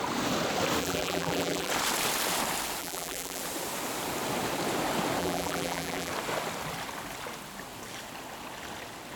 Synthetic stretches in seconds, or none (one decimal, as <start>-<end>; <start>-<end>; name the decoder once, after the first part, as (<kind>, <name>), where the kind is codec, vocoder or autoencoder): 0.8-1.7 (vocoder, BigVGAN v2); 2.8-3.4; 5.2-6.1